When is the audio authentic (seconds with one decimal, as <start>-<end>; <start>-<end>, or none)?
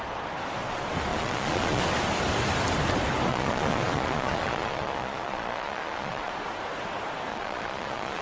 0.0-1.1; 1.8-3.3; 6.3-7.3